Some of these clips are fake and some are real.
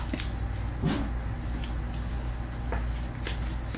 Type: real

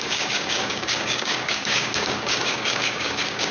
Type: fake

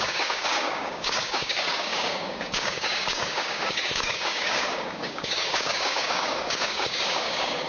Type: fake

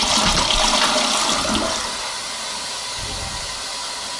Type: real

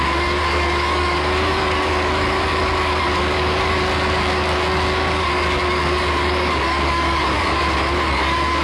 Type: fake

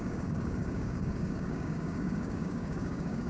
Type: fake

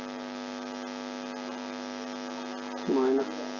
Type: real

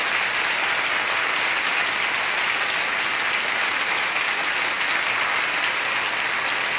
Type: real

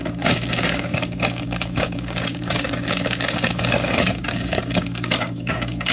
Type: fake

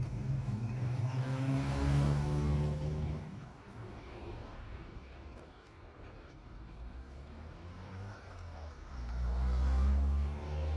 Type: fake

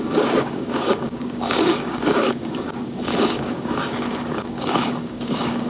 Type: fake